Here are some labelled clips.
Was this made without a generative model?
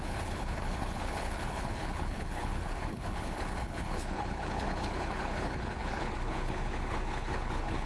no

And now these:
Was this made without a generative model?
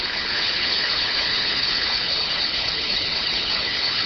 no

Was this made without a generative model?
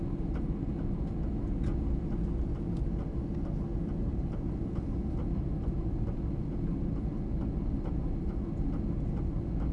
yes